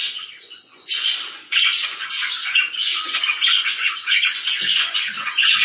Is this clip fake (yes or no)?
yes